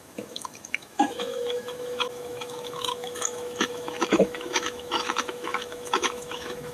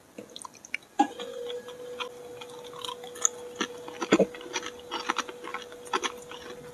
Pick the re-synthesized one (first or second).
first